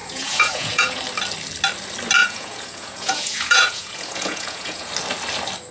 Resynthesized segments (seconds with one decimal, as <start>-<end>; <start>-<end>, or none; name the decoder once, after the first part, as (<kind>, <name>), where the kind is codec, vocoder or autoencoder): 0.0-1.0 (vocoder, Vocos); 2.2-4.9